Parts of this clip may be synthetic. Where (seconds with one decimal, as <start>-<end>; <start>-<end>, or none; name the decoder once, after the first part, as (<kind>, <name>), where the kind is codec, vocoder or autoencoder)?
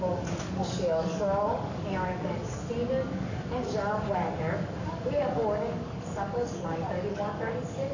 0.0-2.4 (codec, DAC); 3.1-7.9